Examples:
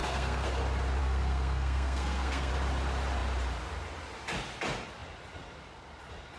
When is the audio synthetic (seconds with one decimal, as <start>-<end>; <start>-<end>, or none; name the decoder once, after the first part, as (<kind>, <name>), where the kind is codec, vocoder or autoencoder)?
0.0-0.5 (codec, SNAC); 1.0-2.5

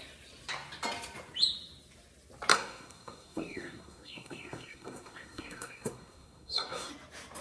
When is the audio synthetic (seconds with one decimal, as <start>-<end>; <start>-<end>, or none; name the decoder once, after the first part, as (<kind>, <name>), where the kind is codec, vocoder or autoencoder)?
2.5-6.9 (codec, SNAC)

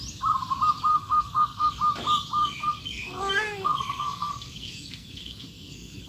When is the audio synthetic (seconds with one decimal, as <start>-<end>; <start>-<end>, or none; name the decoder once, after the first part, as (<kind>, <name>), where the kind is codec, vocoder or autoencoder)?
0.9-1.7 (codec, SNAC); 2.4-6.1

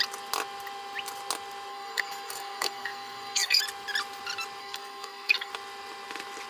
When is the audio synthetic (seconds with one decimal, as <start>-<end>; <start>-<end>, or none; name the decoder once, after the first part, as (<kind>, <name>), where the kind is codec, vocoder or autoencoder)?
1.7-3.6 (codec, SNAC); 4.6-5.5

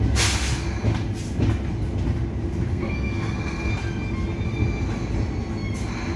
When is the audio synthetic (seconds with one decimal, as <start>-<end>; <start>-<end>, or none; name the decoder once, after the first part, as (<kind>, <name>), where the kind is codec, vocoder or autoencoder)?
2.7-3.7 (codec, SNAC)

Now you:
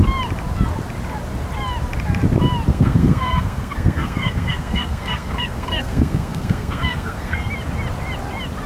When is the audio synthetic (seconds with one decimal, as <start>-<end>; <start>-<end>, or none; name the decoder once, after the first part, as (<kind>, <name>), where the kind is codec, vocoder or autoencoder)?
2.7-7.5 (codec, SNAC)

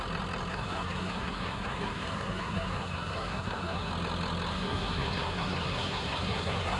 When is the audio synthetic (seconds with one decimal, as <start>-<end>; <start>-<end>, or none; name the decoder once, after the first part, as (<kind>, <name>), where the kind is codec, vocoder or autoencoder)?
0.5-3.9 (codec, SNAC); 4.5-6.8

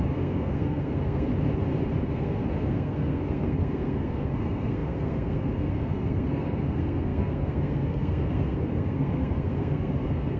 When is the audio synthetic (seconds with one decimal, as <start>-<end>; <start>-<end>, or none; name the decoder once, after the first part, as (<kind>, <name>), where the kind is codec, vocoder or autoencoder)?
0.0-1.3 (codec, SNAC); 2.0-10.4